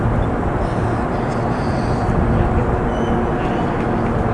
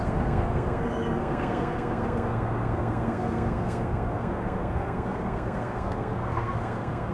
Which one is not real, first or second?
second